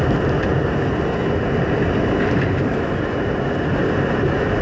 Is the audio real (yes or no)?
yes